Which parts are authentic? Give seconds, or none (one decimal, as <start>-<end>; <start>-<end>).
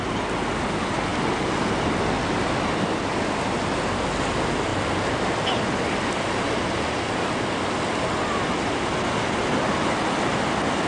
0.0-10.9